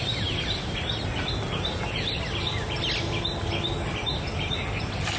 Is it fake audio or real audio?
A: real